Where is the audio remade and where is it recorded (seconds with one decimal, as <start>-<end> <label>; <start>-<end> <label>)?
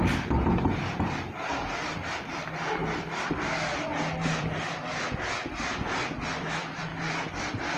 0.0-2.8 recorded; 2.8-4.8 remade; 4.8-6.9 recorded; 6.9-7.8 remade